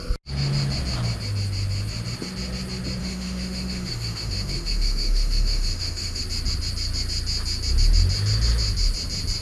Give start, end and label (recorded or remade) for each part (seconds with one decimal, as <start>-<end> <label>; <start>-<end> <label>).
0.0-3.0 recorded; 3.0-6.2 remade; 6.2-9.4 recorded